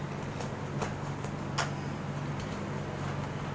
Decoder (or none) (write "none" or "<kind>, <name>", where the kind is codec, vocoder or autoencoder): none